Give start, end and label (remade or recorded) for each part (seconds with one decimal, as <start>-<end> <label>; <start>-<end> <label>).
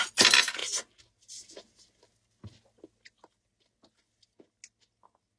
0.0-5.4 recorded